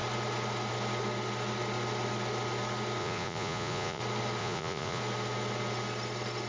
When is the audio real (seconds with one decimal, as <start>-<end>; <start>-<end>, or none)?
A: 0.0-3.0; 4.0-4.4; 5.0-6.5